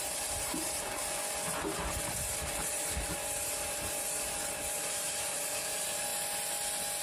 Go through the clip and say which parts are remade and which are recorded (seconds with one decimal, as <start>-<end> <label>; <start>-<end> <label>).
0.0-1.0 remade; 1.0-2.3 recorded; 2.3-6.1 remade; 6.1-7.0 recorded